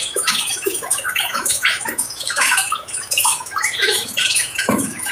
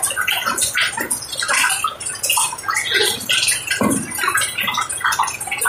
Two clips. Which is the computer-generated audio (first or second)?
first